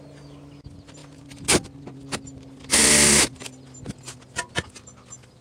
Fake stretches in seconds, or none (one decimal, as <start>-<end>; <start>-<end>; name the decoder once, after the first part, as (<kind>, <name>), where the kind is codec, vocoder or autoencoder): none